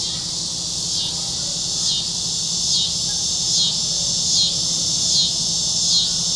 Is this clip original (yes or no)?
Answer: yes